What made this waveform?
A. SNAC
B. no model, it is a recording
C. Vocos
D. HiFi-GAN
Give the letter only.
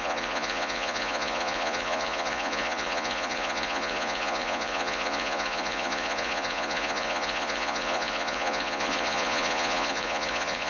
C